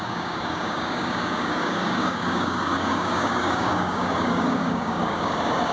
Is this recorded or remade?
remade